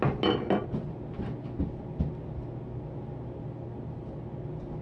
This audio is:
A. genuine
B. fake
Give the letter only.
A